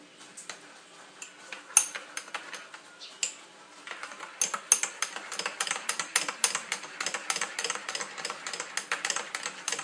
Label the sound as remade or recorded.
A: recorded